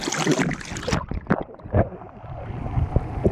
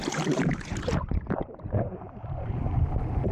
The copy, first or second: second